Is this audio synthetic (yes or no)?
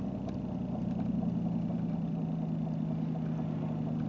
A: no